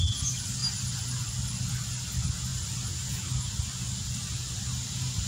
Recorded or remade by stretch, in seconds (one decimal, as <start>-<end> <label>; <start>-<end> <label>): 0.0-0.6 recorded; 0.6-1.3 remade; 1.3-2.5 recorded; 2.5-3.2 remade; 3.2-5.3 recorded